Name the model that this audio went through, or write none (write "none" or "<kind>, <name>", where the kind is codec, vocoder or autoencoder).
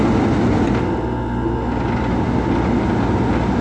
none